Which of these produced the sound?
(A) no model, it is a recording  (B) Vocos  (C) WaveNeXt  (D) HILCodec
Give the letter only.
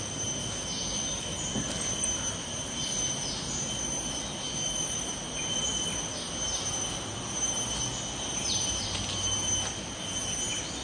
A